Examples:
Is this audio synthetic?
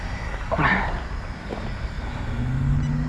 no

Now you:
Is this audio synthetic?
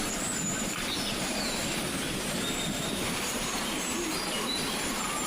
yes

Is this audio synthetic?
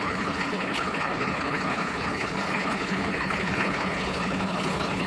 yes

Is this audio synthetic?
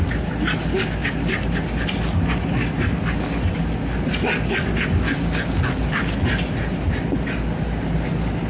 no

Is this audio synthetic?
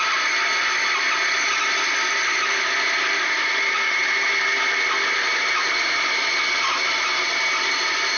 no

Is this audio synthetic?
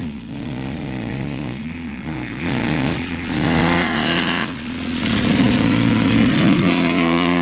yes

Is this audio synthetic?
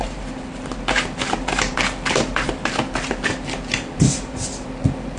yes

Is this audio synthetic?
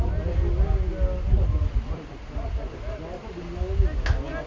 no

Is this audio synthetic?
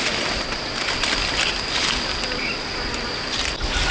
no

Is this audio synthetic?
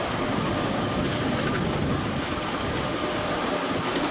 no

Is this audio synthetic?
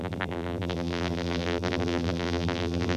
yes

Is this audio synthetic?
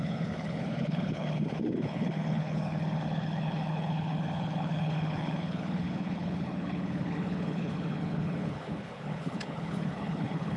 yes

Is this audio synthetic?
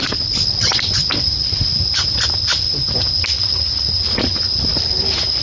no